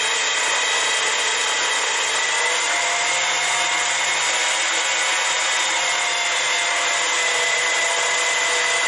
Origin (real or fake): real